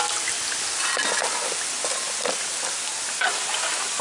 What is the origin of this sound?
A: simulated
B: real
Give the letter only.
B